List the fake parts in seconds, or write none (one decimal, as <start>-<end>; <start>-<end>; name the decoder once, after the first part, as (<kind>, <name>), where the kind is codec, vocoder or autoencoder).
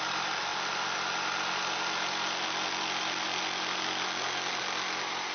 none